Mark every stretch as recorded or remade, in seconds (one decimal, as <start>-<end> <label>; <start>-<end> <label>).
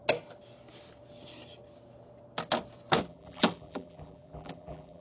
0.0-3.0 recorded; 3.0-5.0 remade